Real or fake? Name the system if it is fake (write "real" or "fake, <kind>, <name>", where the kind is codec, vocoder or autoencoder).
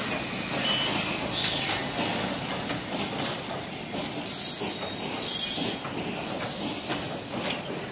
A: real